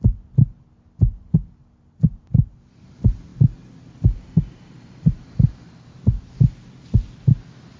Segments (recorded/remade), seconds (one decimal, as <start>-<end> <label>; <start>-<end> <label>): 0.0-7.8 recorded